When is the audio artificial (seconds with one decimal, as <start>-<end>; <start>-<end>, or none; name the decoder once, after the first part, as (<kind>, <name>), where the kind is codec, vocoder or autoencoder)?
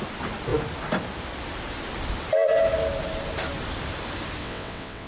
4.4-5.1 (vocoder, WaveNeXt)